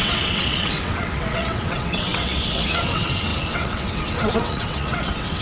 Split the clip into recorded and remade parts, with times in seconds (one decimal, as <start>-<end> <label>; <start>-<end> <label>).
0.0-5.4 remade